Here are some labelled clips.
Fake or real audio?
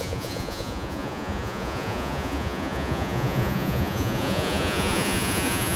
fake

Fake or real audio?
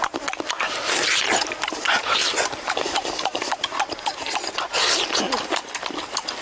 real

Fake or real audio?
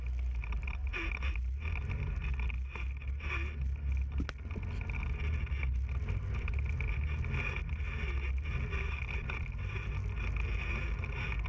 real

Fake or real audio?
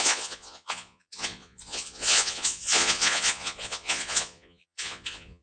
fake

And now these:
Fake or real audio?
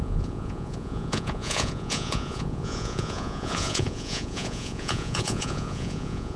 fake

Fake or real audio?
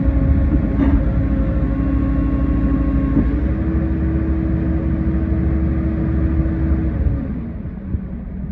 real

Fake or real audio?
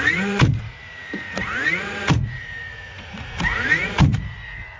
fake